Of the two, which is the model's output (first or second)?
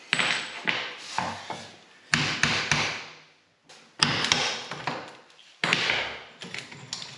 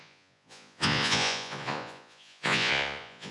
second